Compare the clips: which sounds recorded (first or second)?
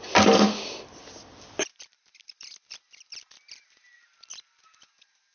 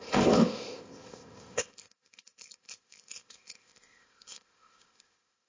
first